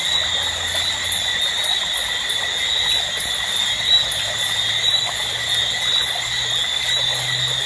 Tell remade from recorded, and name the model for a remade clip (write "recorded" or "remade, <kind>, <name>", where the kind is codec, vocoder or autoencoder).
recorded